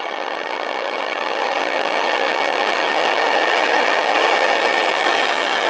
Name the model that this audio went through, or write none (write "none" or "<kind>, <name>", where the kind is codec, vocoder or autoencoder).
vocoder, HiFi-GAN